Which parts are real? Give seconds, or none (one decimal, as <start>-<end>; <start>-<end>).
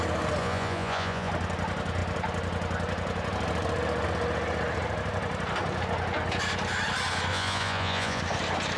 0.0-0.4; 1.3-7.3; 8.2-8.8